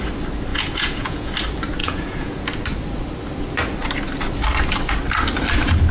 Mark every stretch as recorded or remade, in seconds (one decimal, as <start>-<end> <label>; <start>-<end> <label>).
0.0-0.5 recorded; 0.5-1.3 remade; 1.3-1.8 recorded; 1.8-2.4 remade; 2.4-5.9 recorded